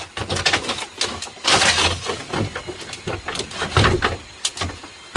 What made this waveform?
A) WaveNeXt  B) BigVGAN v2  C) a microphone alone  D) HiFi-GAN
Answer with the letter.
C